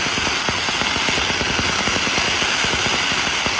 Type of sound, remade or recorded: recorded